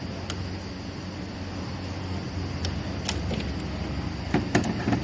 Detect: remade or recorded recorded